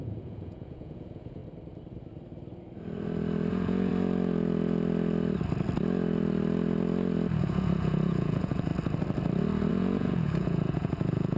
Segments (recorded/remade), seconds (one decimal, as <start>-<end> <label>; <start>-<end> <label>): 0.0-1.4 remade; 1.4-3.5 recorded; 3.5-3.9 remade; 3.9-7.4 recorded; 7.4-8.7 remade; 8.7-9.7 recorded; 9.7-11.4 remade